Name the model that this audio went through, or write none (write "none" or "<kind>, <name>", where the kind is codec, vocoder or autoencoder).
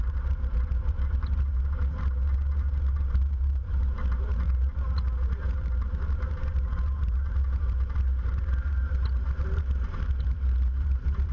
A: vocoder, BigVGAN v2